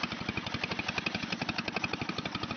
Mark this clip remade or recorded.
recorded